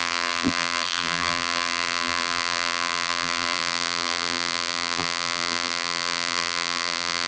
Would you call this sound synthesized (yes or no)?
yes